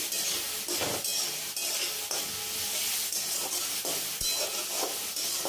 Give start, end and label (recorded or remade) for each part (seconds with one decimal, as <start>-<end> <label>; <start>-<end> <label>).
0.0-5.5 recorded